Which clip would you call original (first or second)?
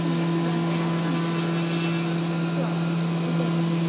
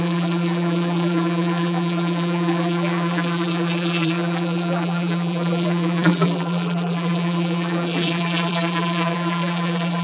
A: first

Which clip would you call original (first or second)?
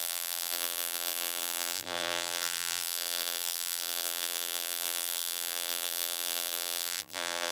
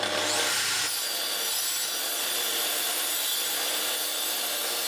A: second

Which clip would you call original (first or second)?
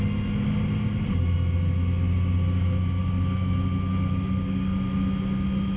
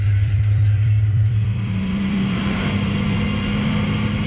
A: first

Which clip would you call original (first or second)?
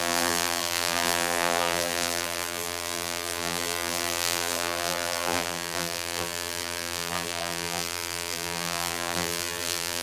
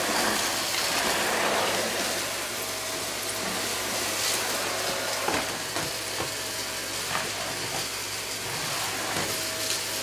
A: second